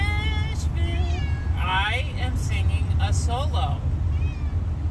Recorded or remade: recorded